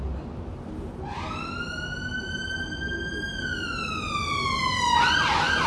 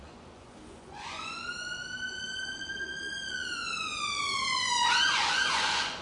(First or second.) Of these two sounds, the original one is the first